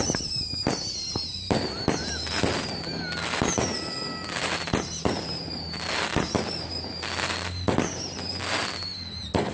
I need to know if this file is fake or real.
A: real